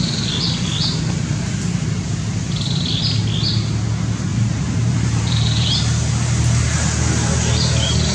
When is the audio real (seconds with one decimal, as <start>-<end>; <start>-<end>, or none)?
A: 0.0-4.3; 5.8-8.1